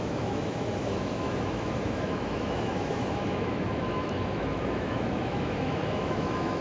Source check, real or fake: fake